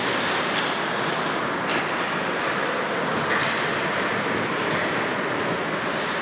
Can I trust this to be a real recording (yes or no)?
yes